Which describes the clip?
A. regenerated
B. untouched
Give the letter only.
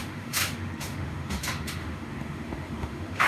A